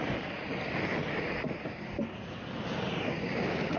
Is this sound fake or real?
real